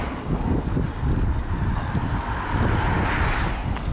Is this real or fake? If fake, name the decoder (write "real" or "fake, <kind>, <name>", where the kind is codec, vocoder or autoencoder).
real